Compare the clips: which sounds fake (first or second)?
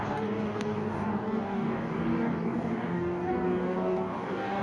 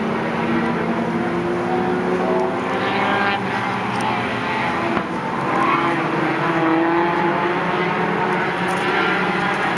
first